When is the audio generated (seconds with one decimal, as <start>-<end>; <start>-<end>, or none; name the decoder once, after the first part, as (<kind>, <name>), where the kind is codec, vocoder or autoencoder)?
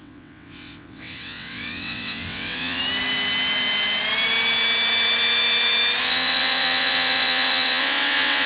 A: 0.0-2.8 (vocoder, WaveNeXt); 6.0-8.5